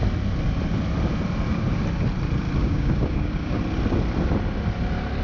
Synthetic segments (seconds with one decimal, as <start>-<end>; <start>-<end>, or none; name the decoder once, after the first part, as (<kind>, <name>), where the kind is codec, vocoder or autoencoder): 2.6-3.6 (codec, DAC)